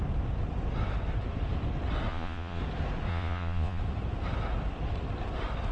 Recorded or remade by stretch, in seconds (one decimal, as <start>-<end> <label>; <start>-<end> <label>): 0.0-2.1 recorded; 2.1-2.6 remade; 2.6-3.1 recorded; 3.1-3.8 remade; 3.8-5.7 recorded